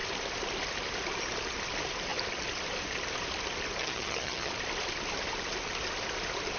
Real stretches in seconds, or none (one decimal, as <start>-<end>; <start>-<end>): 0.0-3.8; 4.5-6.6